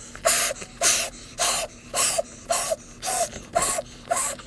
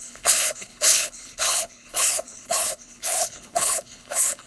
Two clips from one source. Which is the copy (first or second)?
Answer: second